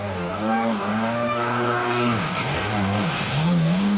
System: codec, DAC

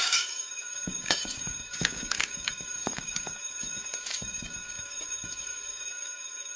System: codec, DAC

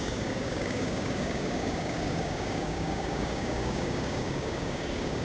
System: codec, DAC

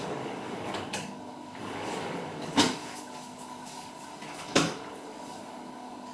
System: codec, DAC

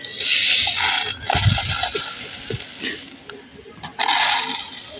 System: none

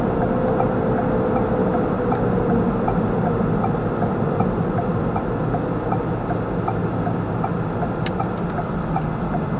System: none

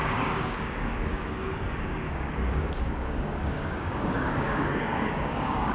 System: codec, DAC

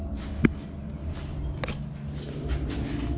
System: none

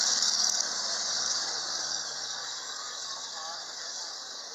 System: codec, DAC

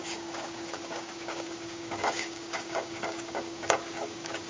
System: codec, DAC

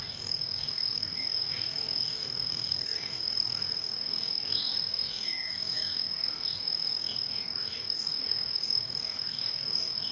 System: codec, DAC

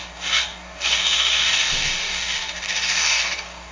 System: codec, DAC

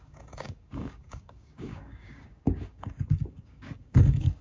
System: codec, DAC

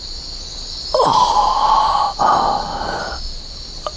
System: none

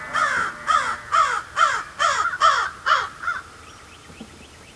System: none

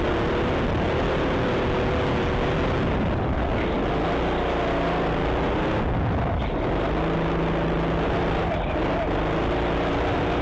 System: none